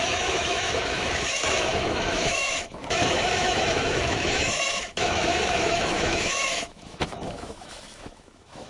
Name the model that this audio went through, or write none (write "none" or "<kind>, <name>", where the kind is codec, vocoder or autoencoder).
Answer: autoencoder, DAC-VAE